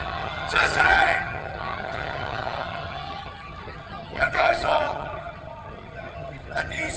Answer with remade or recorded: remade